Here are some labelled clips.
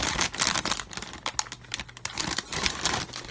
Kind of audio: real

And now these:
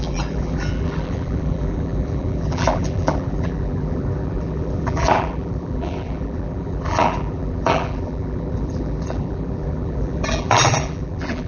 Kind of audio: fake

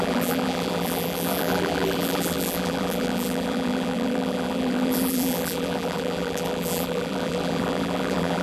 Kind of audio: fake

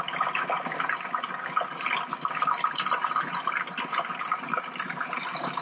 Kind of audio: real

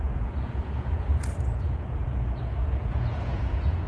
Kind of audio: fake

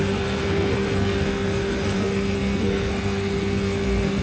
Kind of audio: fake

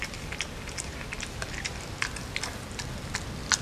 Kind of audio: real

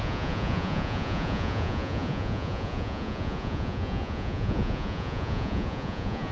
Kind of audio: fake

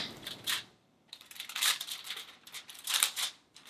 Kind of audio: fake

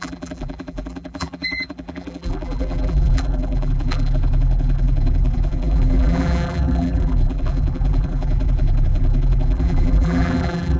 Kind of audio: fake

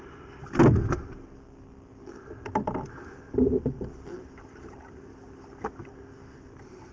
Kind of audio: real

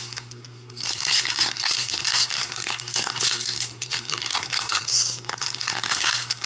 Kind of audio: fake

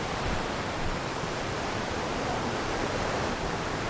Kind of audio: fake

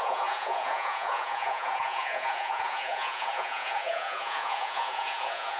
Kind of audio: fake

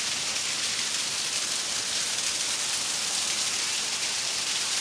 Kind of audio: real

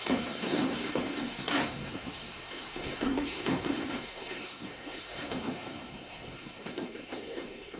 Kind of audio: fake